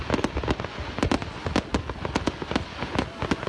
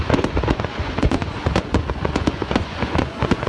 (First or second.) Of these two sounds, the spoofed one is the second